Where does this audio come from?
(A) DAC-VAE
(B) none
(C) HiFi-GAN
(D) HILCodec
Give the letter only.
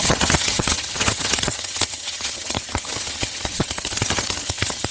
C